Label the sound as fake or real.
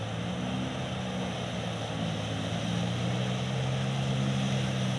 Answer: real